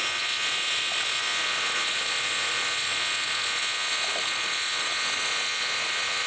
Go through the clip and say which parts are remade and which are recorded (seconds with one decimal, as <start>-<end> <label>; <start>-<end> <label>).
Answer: 0.0-6.3 remade